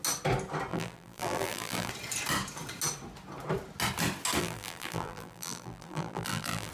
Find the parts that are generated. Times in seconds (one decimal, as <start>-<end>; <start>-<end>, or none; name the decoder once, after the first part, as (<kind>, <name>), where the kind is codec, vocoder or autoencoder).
0.7-1.9 (vocoder, BigVGAN v2); 4.4-6.7